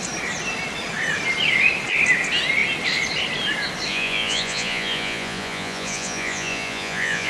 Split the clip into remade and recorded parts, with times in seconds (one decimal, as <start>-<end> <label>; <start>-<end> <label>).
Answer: 0.0-3.9 recorded; 3.9-7.3 remade